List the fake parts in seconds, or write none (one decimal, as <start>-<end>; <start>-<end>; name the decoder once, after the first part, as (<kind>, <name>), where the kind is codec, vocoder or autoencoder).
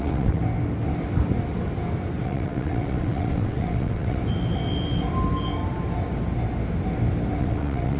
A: 0.0-0.4 (vocoder, WaveNeXt); 2.2-4.2; 7.4-8.0